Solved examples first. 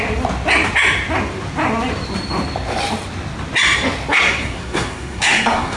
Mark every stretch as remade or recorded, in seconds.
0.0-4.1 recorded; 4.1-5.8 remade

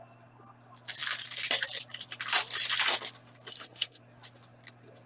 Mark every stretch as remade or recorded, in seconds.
0.0-3.5 recorded; 3.5-4.0 remade; 4.0-5.1 recorded

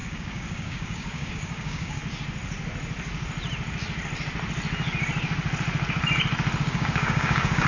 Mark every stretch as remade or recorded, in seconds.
0.0-2.0 remade; 2.0-6.6 recorded; 6.6-7.7 remade

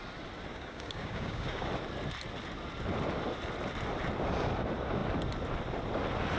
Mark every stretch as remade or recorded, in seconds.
0.0-0.5 recorded; 0.5-1.7 remade; 1.7-6.4 recorded

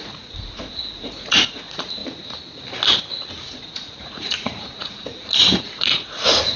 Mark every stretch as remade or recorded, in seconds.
0.0-2.0 remade; 2.0-3.3 recorded; 3.3-6.6 remade

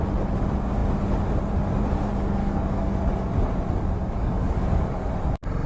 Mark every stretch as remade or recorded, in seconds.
0.0-2.4 recorded; 2.4-2.9 remade; 2.9-4.0 recorded; 4.0-5.1 remade; 5.1-5.7 recorded

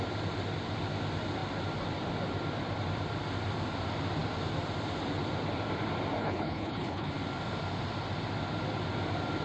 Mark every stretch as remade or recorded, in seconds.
0.0-6.2 recorded; 6.2-7.1 remade; 7.1-9.4 recorded